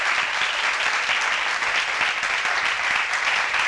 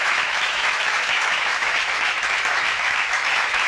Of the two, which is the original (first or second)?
first